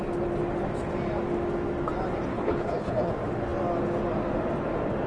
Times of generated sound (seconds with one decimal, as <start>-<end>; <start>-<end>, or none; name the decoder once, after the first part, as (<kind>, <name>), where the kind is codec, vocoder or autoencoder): 2.3-3.1 (codec, HILCodec)